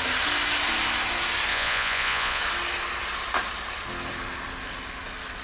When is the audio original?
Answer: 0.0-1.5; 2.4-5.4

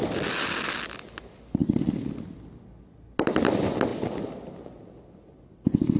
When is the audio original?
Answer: 0.0-6.0

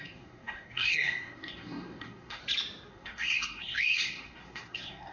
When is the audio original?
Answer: 2.4-2.9

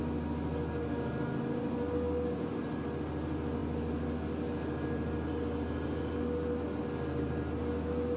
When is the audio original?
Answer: 0.0-8.2

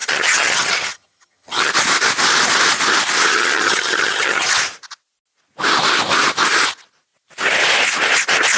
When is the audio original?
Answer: 1.7-3.3; 4.5-8.6